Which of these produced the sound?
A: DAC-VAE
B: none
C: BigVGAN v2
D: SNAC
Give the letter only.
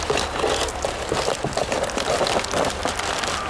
B